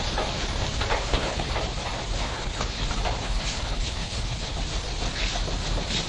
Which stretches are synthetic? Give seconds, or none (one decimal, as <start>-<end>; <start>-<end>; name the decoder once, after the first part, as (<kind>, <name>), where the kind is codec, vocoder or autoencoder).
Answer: 0.9-1.5 (codec, HILCodec); 2.2-2.8; 3.2-4.6